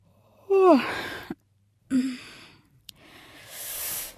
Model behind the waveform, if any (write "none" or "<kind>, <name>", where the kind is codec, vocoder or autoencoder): vocoder, BigVGAN v2